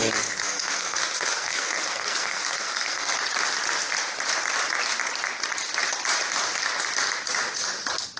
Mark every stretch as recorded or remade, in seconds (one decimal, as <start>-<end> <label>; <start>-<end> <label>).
0.0-3.2 remade; 3.2-8.2 recorded